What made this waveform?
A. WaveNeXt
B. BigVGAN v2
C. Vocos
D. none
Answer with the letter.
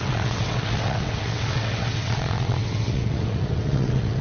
A